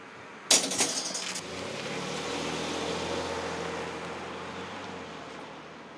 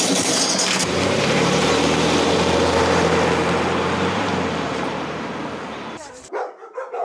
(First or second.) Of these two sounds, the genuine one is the first